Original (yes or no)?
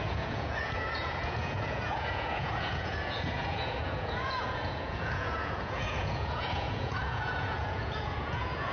no